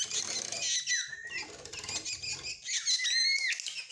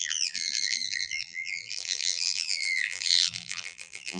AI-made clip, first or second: second